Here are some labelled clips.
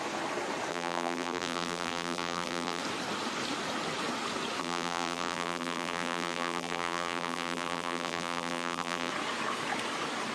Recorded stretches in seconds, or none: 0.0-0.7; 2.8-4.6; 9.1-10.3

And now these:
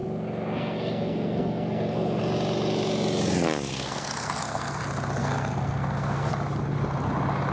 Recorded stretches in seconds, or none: 2.2-3.7; 4.8-5.2; 6.3-7.5